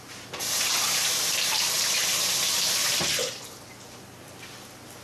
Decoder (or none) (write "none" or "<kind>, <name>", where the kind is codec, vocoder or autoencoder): none